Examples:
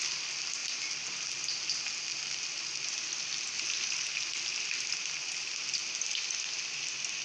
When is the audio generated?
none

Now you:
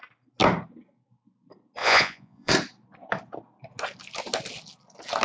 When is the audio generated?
1.8-2.5

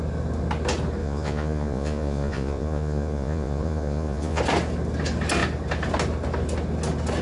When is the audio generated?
1.0-4.4

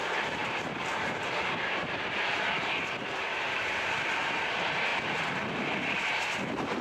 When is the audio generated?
0.4-4.5; 4.9-6.2

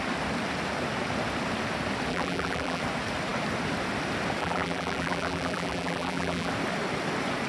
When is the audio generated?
2.1-2.8; 4.4-6.5

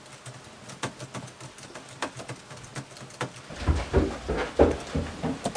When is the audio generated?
none